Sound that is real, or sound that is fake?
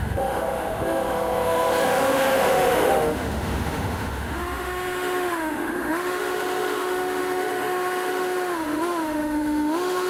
fake